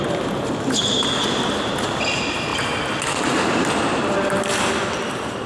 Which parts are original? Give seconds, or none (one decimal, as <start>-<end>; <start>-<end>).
0.0-5.5